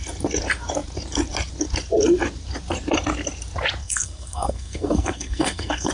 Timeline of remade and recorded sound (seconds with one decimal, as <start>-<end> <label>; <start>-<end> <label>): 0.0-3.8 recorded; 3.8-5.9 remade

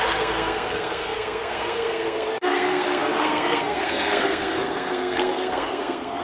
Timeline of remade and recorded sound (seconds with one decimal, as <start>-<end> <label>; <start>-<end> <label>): 0.0-6.2 remade

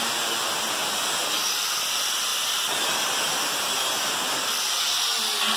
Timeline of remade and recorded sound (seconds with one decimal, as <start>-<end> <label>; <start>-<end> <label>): 0.0-5.6 recorded

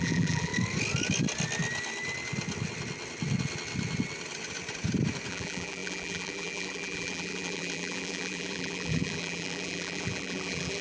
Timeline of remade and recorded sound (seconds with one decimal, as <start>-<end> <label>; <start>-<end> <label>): 0.0-0.5 remade; 0.5-5.3 recorded; 5.3-10.8 remade